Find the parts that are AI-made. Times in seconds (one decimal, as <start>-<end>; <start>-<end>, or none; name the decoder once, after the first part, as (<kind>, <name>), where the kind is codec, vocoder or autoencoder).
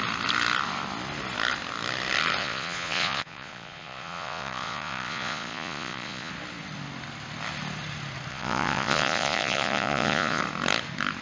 2.4-6.3 (vocoder, Vocos); 8.3-10.4